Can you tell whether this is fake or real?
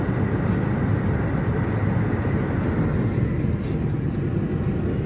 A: real